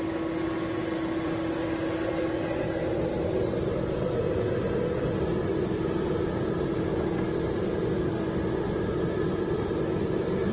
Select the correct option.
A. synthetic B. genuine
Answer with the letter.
B